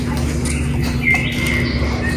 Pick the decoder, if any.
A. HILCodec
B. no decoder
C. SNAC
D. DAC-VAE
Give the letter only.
B